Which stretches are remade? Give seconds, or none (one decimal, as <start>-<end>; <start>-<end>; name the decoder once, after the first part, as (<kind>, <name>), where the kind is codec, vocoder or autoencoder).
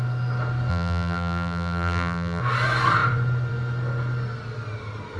0.7-2.4 (vocoder, BigVGAN v2)